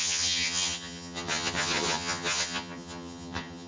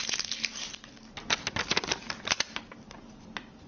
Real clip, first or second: second